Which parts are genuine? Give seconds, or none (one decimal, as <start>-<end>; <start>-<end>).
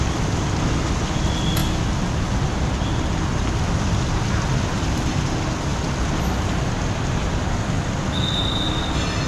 0.0-9.3